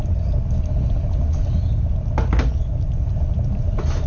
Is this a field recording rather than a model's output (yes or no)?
yes